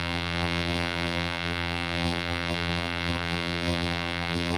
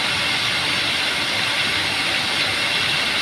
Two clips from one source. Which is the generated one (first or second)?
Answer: first